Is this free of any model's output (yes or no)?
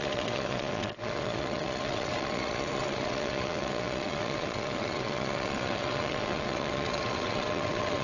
no